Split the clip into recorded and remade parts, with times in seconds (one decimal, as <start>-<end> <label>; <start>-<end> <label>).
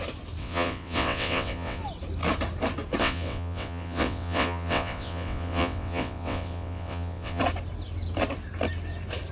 0.0-0.4 recorded; 0.4-1.8 remade; 1.8-3.0 recorded; 3.0-7.4 remade; 7.4-9.3 recorded